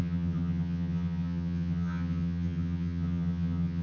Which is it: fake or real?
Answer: fake